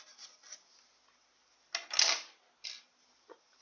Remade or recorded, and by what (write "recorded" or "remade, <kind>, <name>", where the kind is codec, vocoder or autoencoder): recorded